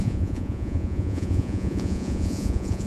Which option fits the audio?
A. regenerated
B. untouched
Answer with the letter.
A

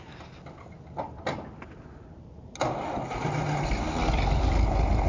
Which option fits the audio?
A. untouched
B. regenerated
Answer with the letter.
A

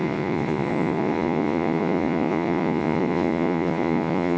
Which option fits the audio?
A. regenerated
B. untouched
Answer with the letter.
A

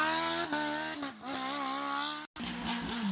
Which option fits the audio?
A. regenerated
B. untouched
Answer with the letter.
B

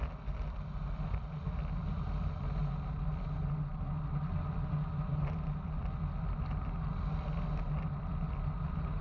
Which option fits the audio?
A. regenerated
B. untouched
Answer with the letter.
B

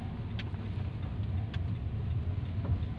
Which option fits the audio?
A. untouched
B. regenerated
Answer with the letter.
A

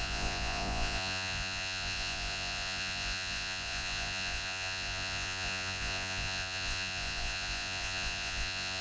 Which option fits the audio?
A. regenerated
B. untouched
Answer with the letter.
A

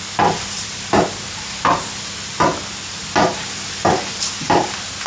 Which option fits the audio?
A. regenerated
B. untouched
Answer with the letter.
B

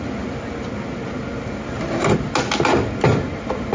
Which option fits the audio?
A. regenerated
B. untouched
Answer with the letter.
B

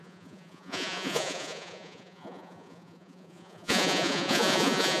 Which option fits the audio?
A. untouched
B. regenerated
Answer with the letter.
B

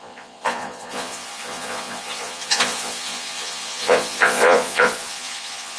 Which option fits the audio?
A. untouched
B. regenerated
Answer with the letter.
B